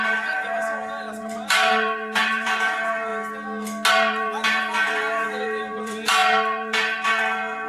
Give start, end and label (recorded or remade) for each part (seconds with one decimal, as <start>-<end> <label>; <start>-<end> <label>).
0.0-3.1 remade; 3.1-3.9 recorded; 3.9-7.7 remade

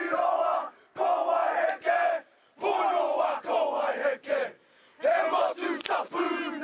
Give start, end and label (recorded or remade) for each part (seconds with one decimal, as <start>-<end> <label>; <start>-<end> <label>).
0.0-1.4 recorded; 1.4-1.9 remade; 1.9-6.6 recorded